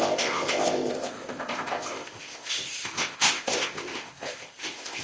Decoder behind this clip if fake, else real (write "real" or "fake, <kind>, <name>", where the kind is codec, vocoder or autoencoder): fake, codec, ZipCodec